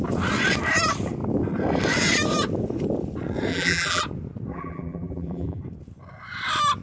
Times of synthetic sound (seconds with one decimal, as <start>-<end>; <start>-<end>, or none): 3.5-4.0; 4.5-5.6